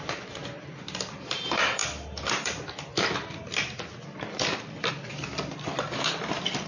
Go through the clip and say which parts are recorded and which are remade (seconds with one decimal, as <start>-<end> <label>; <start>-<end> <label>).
0.0-6.7 recorded